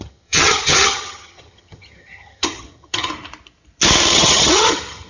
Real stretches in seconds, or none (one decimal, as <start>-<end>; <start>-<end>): 3.1-4.1